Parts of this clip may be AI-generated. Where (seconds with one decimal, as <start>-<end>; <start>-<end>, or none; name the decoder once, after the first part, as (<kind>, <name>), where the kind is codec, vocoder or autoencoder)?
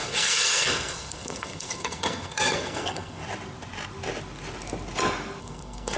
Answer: 0.0-3.2 (codec, SNAC); 5.4-6.0